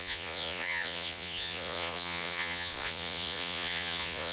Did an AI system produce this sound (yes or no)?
yes